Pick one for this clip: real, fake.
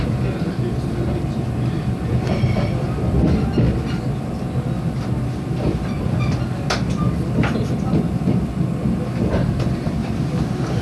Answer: real